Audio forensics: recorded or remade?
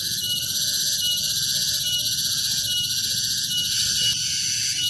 recorded